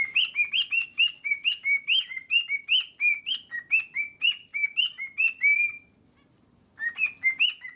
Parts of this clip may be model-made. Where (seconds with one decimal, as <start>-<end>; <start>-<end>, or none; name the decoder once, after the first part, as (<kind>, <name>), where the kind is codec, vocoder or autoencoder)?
none